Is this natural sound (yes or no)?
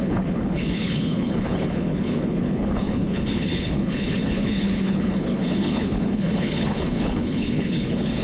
no